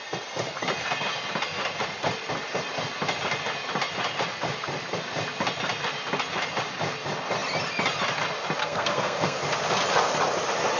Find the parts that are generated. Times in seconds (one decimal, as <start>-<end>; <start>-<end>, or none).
8.6-9.4